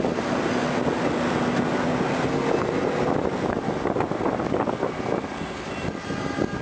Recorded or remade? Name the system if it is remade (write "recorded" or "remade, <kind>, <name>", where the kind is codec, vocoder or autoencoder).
recorded